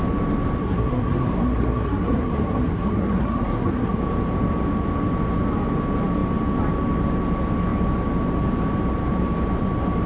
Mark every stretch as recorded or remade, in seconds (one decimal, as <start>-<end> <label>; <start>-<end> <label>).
0.0-0.6 recorded; 0.6-4.0 remade; 4.0-10.1 recorded